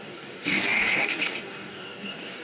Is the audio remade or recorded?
remade